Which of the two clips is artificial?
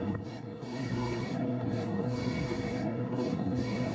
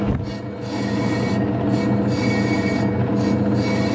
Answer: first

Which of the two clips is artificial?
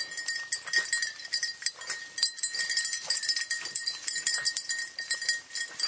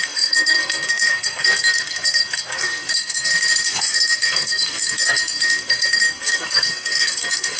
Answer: second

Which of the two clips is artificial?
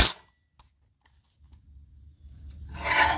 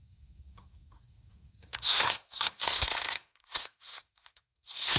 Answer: second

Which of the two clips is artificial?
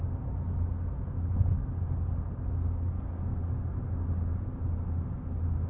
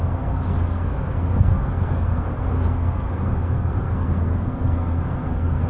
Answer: second